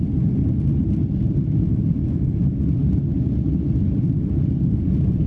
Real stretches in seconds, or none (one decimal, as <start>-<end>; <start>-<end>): 0.0-5.3